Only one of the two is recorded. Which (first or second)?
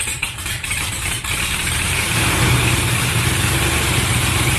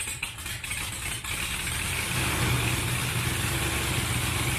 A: second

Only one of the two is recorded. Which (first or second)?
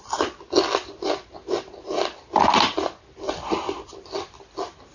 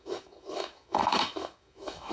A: first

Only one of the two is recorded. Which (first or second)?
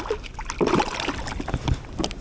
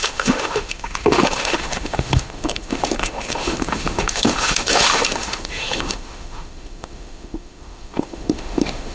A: first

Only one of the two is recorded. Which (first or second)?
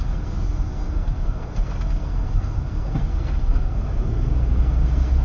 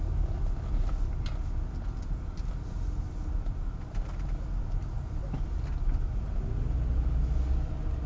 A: second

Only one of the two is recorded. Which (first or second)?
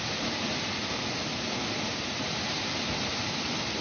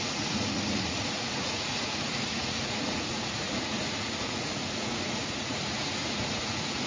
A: first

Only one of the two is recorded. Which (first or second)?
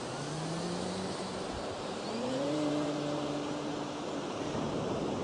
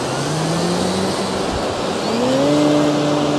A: second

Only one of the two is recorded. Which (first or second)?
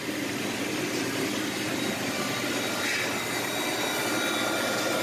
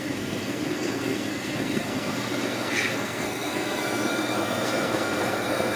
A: first